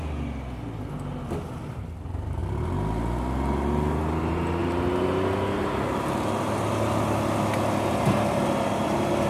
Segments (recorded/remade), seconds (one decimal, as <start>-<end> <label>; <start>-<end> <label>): 0.0-9.3 recorded